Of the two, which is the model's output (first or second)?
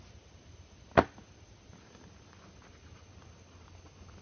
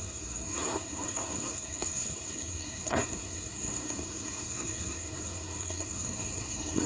second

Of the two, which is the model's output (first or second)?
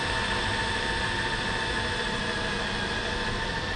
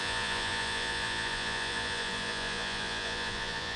second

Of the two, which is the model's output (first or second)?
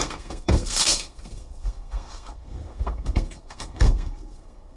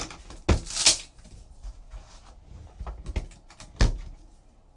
first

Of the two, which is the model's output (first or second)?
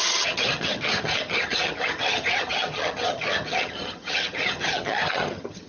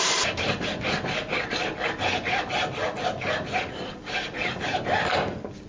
first